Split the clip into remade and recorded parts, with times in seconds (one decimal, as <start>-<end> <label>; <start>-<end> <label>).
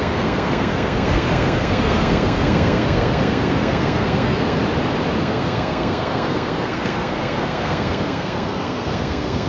0.0-4.6 remade; 4.6-5.2 recorded; 5.2-9.5 remade